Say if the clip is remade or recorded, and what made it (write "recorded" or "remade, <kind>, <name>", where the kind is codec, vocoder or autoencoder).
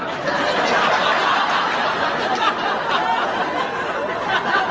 recorded